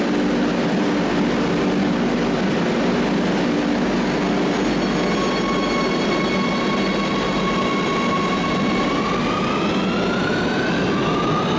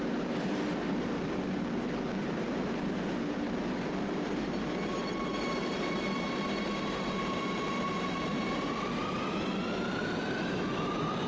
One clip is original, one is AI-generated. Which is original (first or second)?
first